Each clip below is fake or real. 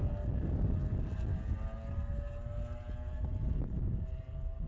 real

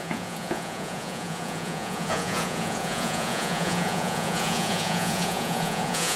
fake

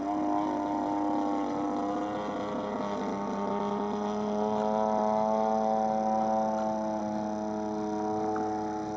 real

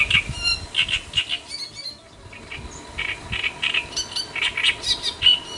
real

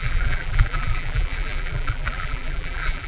fake